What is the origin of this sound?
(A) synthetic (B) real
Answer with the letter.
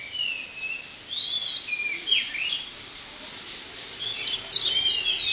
B